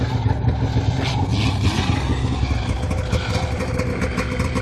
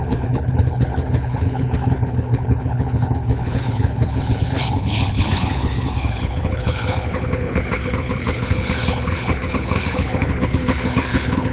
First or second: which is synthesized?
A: second